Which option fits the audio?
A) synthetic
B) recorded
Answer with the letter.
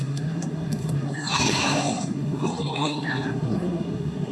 A